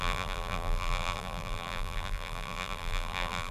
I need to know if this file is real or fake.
fake